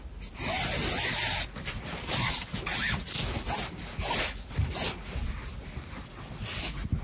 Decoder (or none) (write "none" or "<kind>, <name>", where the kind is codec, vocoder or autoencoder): none